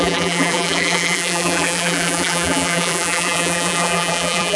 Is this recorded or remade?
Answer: remade